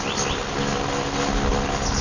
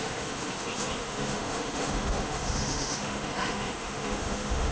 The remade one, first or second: second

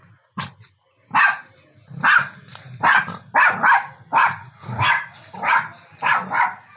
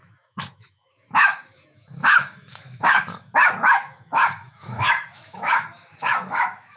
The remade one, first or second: second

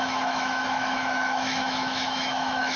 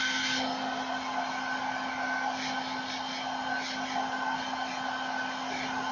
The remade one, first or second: first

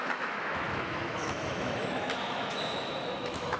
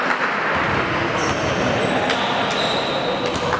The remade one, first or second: first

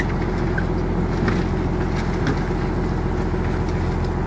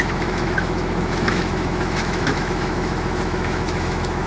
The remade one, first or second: second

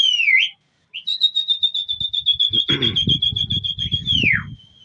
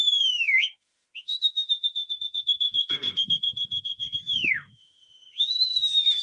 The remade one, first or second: second